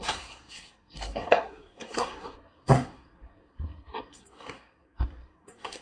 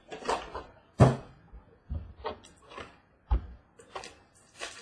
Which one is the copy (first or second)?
first